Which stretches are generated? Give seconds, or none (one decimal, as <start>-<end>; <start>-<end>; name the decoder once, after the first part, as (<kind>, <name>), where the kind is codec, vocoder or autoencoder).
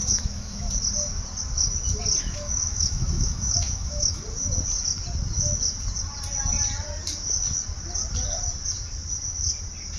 0.0-0.7 (autoencoder, DAC-VAE); 2.2-4.2